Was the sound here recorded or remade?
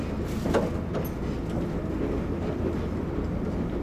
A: recorded